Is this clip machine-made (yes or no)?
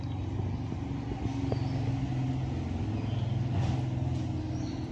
no